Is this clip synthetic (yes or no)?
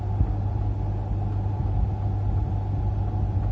no